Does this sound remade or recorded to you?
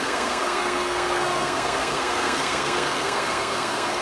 remade